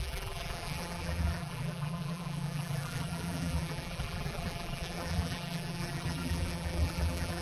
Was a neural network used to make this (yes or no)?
yes